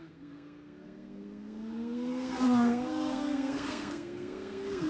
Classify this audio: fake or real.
fake